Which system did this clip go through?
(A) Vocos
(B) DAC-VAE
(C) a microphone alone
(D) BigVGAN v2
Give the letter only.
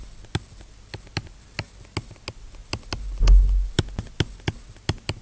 C